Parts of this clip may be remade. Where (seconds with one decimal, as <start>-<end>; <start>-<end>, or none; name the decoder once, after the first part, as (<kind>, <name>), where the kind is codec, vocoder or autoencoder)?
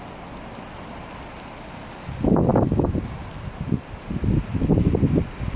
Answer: 2.5-4.2 (vocoder, BigVGAN v2)